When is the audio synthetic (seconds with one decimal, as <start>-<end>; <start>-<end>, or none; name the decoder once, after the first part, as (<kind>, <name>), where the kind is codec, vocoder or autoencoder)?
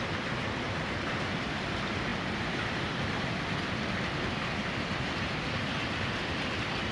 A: none